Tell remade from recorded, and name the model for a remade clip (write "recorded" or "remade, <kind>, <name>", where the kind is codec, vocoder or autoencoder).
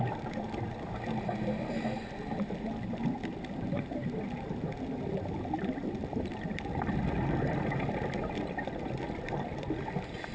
recorded